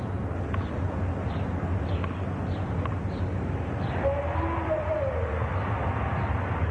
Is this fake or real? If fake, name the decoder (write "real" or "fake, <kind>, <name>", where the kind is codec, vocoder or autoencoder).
real